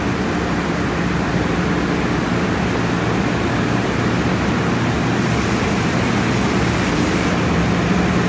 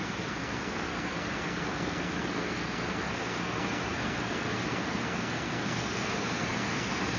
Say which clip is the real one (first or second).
first